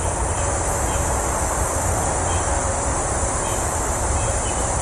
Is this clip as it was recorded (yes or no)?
yes